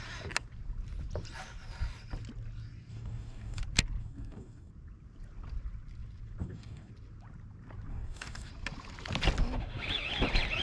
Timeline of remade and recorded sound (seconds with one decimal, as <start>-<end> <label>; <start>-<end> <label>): 0.0-2.9 recorded; 2.9-3.6 remade; 3.6-4.0 recorded; 4.0-4.7 remade; 4.7-6.4 recorded; 6.4-6.9 remade; 6.9-7.9 recorded; 7.9-8.5 remade; 8.5-10.6 recorded